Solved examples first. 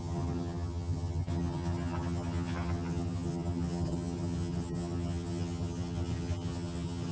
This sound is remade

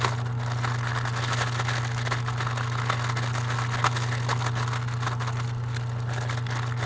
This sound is recorded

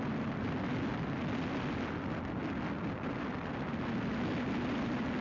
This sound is recorded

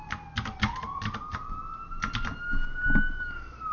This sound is recorded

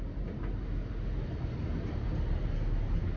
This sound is recorded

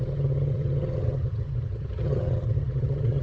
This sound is remade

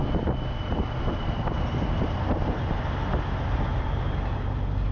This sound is recorded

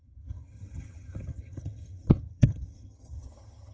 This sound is remade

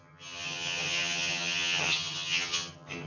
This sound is remade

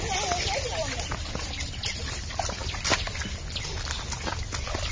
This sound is recorded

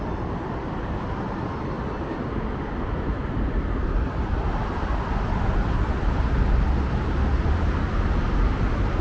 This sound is recorded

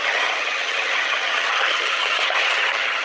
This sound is remade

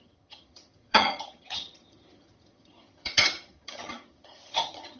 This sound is remade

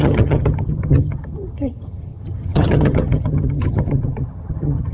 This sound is remade